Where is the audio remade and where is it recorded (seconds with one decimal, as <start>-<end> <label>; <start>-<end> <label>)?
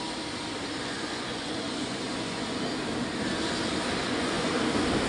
0.0-0.8 recorded; 0.8-2.6 remade; 2.6-4.0 recorded; 4.0-4.5 remade; 4.5-5.1 recorded